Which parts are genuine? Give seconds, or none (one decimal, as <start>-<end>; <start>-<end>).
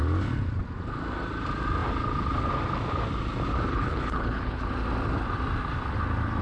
0.0-3.7; 4.7-6.4